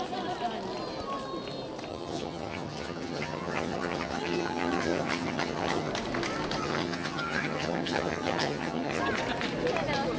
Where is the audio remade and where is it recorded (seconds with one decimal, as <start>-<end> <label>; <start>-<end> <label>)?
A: 0.0-1.9 recorded; 1.9-5.9 remade; 5.9-6.6 recorded; 6.6-9.0 remade; 9.0-10.2 recorded